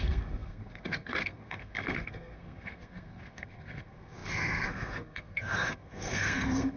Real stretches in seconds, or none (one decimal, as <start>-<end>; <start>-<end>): none